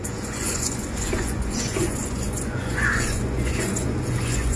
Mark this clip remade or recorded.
remade